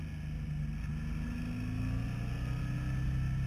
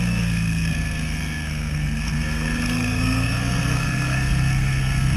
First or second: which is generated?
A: second